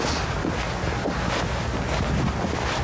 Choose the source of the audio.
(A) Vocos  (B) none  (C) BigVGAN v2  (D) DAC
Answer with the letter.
B